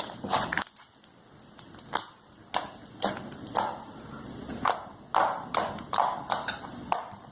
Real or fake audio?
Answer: real